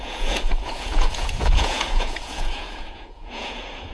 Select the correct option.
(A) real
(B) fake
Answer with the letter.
B